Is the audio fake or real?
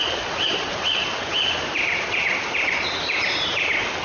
real